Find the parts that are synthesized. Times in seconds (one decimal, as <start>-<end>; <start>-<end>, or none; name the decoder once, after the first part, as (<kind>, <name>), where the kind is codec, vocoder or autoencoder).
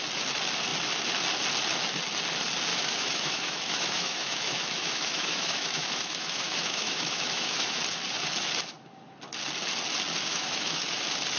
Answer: 2.7-7.8 (autoencoder, DAC-VAE); 10.3-10.8